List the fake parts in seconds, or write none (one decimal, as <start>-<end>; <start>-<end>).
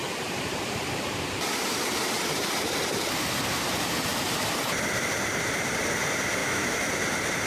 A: 6.4-6.9